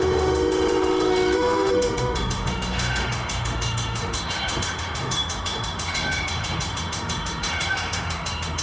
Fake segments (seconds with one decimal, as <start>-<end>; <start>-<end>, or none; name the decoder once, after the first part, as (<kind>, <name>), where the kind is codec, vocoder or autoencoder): 0.0-8.6 (autoencoder, DAC-VAE)